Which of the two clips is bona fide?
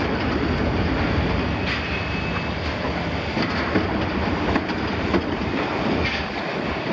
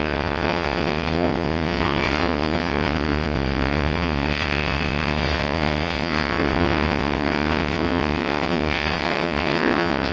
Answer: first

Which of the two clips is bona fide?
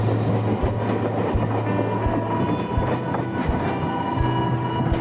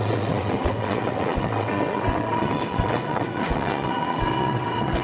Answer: first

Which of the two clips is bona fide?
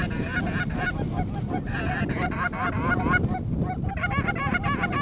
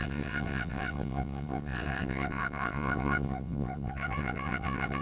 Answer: first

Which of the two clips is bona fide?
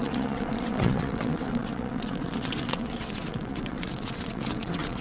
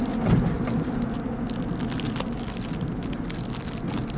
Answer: second